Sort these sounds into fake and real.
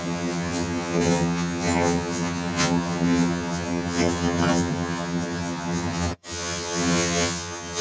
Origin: fake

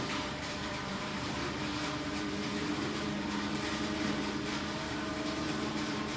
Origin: fake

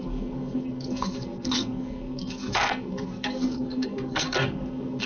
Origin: fake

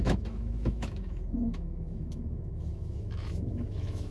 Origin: fake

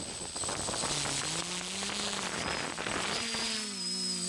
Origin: real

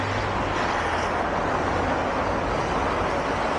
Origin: real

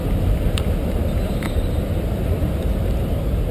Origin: real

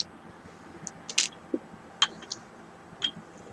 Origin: real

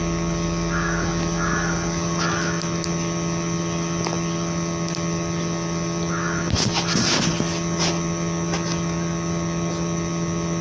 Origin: real